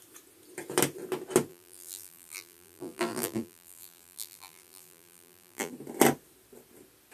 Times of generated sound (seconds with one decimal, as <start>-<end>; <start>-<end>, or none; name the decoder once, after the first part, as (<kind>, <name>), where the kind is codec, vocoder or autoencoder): 1.5-5.7 (vocoder, BigVGAN v2)